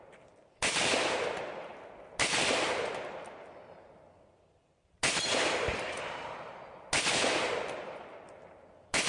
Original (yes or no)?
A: yes